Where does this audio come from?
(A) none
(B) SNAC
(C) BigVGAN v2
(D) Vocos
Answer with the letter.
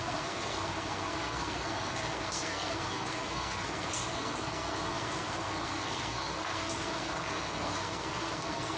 B